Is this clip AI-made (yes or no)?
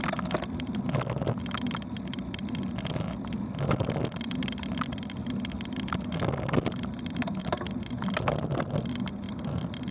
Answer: no